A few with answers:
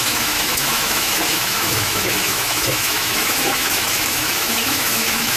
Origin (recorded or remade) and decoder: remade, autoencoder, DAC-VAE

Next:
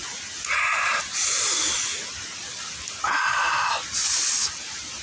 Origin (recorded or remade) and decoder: recorded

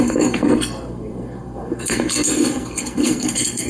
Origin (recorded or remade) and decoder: remade, codec, SNAC